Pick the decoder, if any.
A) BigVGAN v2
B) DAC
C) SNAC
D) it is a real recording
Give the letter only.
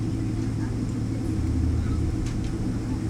D